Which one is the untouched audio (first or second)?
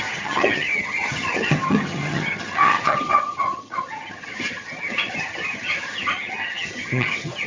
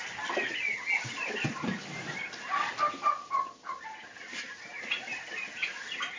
second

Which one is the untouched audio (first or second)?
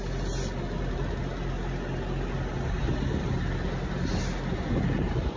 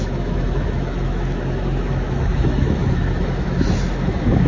first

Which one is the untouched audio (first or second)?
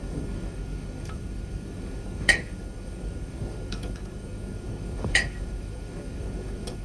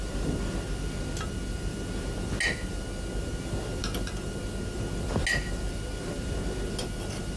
second